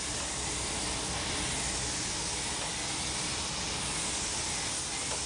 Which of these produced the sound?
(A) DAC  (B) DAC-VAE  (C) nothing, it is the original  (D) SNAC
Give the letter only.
C